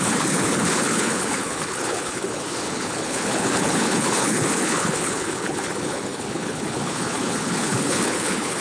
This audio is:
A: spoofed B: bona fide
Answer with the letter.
A